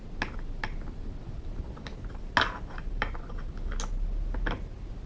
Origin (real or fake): real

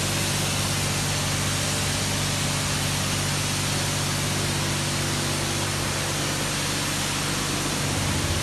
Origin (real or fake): real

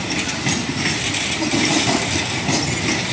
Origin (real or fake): real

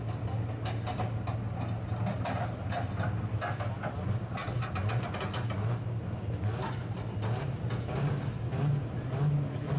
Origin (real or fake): real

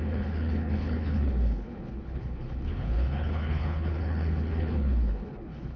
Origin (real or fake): fake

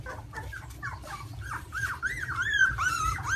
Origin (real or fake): fake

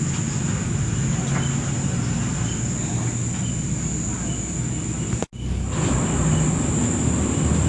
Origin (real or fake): real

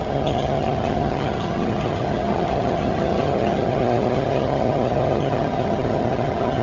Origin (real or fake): fake